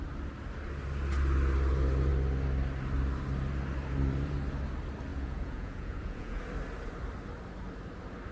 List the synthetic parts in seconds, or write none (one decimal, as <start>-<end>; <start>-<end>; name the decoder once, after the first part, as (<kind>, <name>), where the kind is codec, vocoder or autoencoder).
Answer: 5.1-6.4 (vocoder, Vocos)